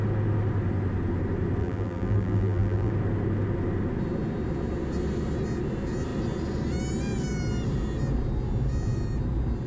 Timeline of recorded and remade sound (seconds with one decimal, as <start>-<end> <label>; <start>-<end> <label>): 0.0-1.6 recorded; 1.6-2.9 remade; 2.9-9.7 recorded